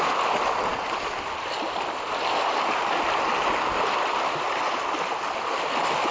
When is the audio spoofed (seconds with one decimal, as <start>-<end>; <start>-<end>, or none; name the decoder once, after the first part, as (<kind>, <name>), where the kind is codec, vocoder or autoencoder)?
none